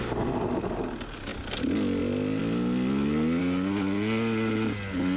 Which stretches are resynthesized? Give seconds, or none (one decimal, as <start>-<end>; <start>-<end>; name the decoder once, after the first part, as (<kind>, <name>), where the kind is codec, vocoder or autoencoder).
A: none